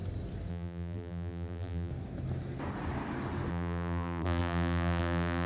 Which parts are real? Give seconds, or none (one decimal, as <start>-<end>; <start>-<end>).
0.0-0.5; 1.9-3.5